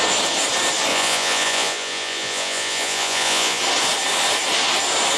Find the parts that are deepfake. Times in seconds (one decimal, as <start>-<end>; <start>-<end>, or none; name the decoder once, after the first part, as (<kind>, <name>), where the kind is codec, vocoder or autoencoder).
0.9-3.6 (vocoder, Vocos)